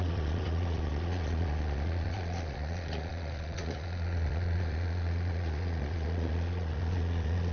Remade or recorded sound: remade